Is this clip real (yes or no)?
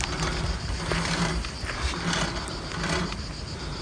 yes